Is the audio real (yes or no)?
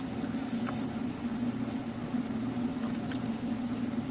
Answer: yes